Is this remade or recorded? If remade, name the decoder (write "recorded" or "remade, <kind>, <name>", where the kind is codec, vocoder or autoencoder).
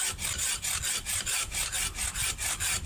recorded